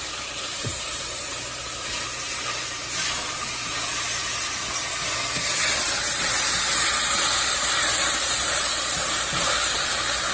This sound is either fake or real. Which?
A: fake